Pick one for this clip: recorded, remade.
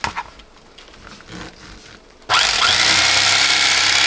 recorded